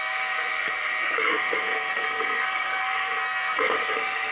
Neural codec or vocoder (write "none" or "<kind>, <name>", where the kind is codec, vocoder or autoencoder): codec, SNAC